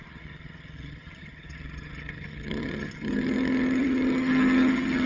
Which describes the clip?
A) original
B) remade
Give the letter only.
B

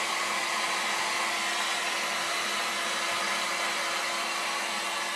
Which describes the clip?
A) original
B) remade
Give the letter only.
A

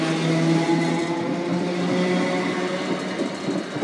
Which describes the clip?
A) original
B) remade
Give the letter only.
A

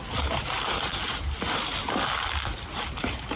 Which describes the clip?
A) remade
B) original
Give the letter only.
B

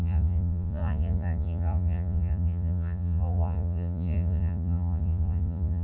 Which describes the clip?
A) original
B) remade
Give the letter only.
B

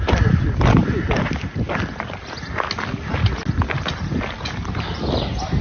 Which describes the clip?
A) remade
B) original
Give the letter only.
B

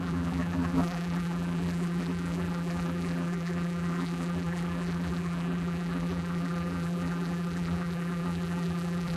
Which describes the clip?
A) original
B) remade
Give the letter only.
B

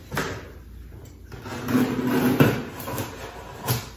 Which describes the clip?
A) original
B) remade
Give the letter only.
A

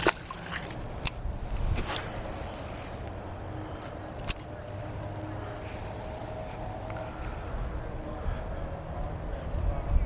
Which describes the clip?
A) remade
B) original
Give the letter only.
B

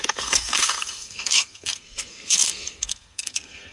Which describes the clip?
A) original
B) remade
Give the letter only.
B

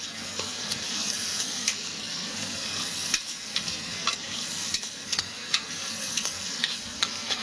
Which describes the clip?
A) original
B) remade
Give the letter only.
B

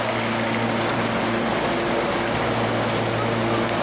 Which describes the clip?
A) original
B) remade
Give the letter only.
A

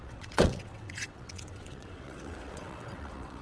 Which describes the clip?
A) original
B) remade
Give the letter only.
B